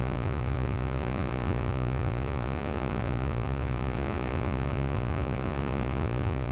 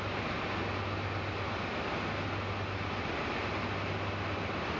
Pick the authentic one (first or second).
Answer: second